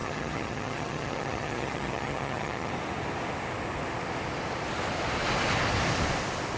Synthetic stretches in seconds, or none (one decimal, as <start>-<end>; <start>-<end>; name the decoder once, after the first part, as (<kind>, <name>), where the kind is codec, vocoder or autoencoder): 0.0-2.7 (vocoder, HiFi-GAN)